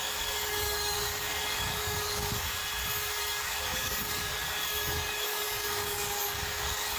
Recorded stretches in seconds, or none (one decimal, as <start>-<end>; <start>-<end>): 2.6-3.2